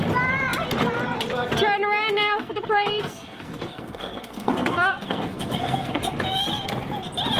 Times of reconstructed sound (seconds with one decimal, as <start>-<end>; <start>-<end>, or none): 2.0-6.0